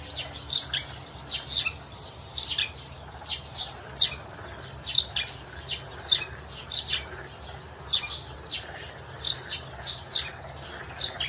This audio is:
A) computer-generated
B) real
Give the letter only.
B